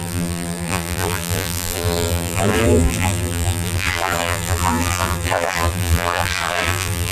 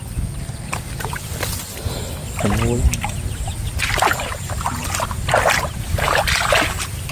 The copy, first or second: first